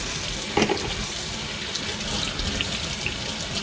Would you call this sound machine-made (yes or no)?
no